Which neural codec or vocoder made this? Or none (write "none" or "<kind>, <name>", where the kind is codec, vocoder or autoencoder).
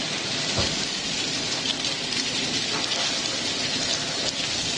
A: none